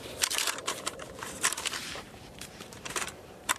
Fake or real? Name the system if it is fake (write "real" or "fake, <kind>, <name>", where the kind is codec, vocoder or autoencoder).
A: fake, vocoder, BigVGAN v2